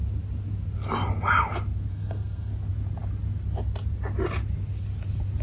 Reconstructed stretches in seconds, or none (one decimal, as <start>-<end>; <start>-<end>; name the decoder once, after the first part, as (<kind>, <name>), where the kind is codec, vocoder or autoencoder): 1.9-2.5 (codec, SNAC)